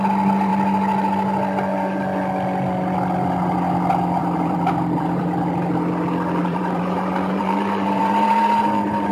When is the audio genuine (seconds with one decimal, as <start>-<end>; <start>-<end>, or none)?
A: 0.0-4.2; 5.2-6.4